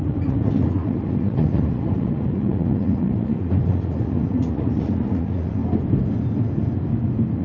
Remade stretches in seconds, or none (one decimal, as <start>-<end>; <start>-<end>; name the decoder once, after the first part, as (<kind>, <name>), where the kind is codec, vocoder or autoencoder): 0.0-5.6 (vocoder, Vocos)